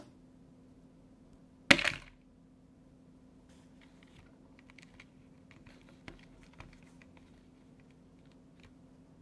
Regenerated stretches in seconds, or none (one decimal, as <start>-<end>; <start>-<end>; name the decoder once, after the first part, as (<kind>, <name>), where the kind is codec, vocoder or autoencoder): none